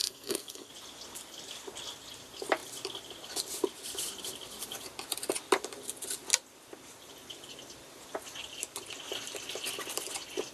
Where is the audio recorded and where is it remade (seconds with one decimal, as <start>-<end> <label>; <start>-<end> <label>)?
0.0-0.7 remade; 0.7-10.5 recorded